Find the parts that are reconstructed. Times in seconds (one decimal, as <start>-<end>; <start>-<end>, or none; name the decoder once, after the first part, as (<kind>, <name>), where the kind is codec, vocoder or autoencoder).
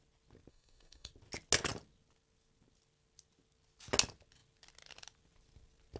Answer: 0.5-1.1 (codec, DAC)